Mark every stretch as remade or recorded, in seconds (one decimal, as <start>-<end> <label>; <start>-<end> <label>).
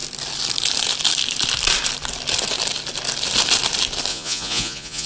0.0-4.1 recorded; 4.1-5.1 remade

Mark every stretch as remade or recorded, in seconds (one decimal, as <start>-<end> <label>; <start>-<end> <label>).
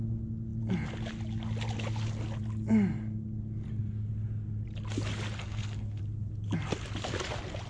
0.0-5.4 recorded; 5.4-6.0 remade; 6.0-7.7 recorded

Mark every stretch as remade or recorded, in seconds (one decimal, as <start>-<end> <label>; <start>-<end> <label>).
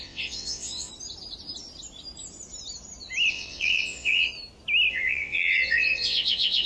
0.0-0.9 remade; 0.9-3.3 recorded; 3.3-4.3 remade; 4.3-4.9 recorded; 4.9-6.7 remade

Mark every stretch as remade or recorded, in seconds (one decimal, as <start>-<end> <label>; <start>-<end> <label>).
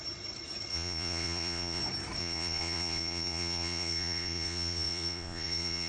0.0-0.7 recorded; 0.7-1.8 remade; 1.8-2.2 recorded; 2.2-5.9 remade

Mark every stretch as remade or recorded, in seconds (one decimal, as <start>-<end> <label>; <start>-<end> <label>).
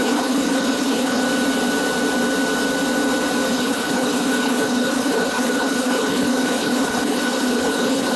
0.0-1.2 remade; 1.2-3.5 recorded; 3.5-8.2 remade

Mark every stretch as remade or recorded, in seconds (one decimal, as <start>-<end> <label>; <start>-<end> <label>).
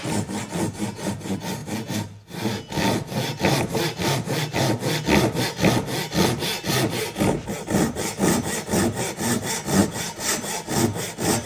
0.0-11.5 recorded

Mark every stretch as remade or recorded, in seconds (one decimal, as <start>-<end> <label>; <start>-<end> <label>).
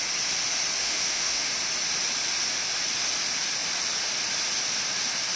0.0-0.8 recorded; 0.8-1.5 remade; 1.5-5.4 recorded